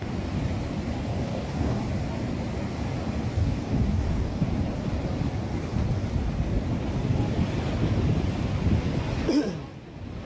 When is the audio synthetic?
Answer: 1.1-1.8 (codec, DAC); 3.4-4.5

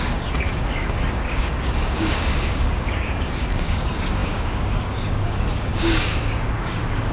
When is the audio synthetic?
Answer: 0.0-7.1 (codec, DAC)

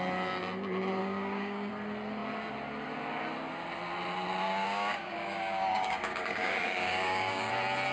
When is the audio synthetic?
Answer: 1.0-1.7 (codec, DAC); 4.4-7.5

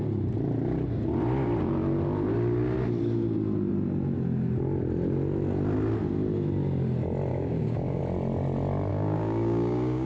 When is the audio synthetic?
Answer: 7.3-8.0 (codec, DAC); 8.9-10.1

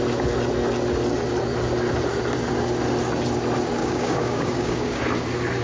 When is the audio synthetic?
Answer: 3.8-5.0 (codec, DAC)

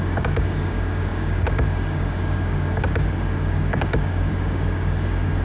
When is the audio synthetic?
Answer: 0.0-5.4 (codec, DAC)

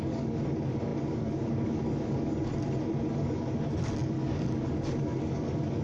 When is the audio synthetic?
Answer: 0.0-2.5 (codec, DAC); 3.1-5.8

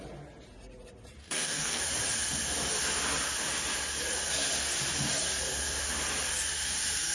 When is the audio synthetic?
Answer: 1.2-1.8 (codec, DAC)